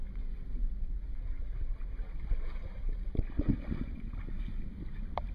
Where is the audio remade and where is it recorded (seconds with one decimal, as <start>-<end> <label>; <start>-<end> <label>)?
0.0-5.3 recorded

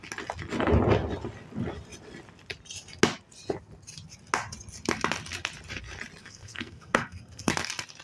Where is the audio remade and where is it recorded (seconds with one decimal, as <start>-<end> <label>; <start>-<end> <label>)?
0.0-6.2 recorded; 6.2-7.5 remade; 7.5-8.0 recorded

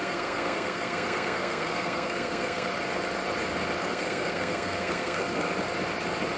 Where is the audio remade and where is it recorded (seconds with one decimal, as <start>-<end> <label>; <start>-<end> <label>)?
0.0-2.7 remade; 2.7-3.8 recorded; 3.8-5.5 remade; 5.5-6.4 recorded